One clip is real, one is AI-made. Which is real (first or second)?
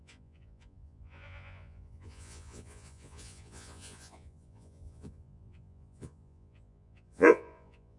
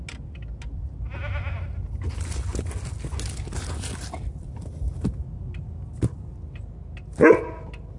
second